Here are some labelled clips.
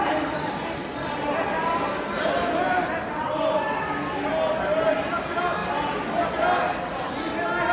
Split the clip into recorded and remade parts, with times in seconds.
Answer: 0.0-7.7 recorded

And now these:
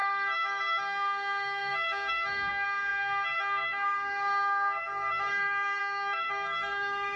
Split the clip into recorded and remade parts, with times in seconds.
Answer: 0.0-7.2 remade

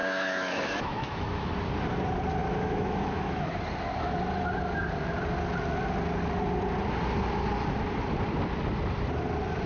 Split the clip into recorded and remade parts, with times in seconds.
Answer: 0.0-1.5 remade; 1.5-2.4 recorded; 2.4-3.6 remade; 3.6-9.7 recorded